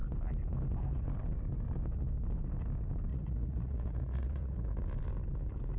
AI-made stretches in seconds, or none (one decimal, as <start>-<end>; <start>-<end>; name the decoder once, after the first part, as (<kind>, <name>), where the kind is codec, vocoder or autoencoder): 3.1-4.8 (vocoder, Vocos)